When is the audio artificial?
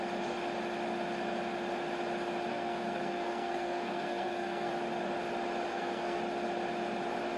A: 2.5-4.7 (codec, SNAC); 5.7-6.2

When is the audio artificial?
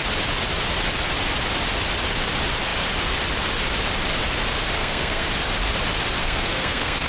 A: 4.8-5.3 (codec, SNAC); 6.2-7.1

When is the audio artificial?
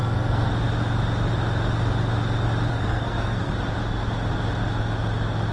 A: 0.0-0.5 (codec, SNAC); 2.7-3.5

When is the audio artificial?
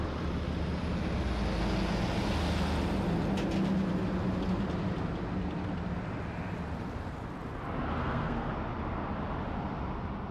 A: 8.0-8.5 (codec, SNAC)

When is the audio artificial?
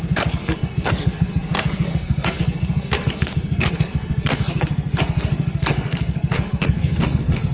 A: 0.0-7.5 (codec, SNAC)